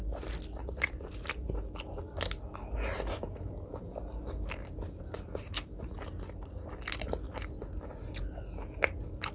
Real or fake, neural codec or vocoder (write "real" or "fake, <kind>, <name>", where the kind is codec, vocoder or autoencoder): real